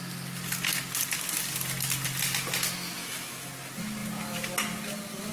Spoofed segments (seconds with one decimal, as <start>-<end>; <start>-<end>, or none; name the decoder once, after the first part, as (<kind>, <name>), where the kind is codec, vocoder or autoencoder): 3.0-3.5 (autoencoder, DAC-VAE)